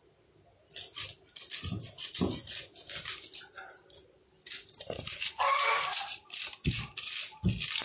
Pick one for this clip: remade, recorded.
recorded